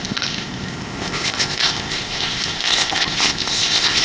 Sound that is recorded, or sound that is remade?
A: remade